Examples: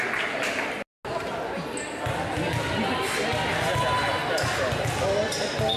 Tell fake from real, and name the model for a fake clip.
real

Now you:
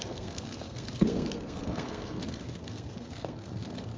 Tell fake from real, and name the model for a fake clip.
fake, codec, SNAC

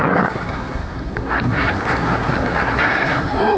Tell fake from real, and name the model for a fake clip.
fake, codec, SNAC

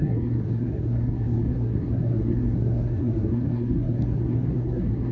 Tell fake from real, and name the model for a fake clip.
fake, codec, SNAC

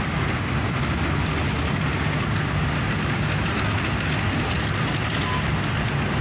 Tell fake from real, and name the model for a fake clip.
real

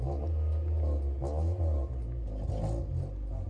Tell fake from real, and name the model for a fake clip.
real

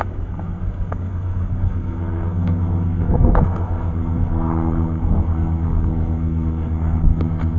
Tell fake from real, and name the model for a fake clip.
fake, codec, SNAC